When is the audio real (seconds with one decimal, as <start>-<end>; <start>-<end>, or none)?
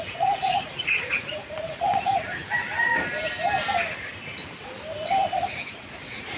2.4-5.5